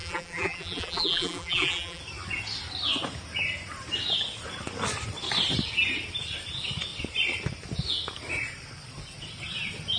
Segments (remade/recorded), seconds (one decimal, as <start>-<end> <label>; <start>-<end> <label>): 0.0-2.0 remade; 2.0-10.0 recorded